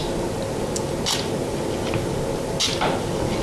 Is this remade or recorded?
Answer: recorded